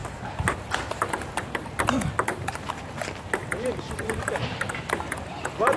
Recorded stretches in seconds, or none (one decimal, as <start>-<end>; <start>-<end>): 2.7-3.4; 4.4-5.8